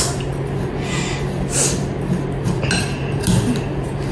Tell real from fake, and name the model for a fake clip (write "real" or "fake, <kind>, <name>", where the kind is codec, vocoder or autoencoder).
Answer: real